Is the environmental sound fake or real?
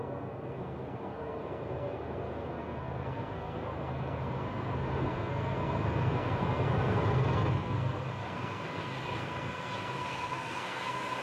fake